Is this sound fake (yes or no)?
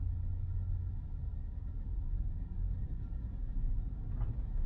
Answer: no